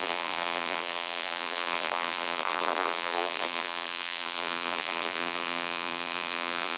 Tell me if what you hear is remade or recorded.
remade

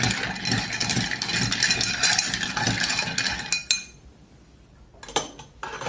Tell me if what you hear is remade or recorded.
recorded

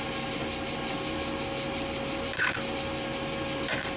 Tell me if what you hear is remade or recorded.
recorded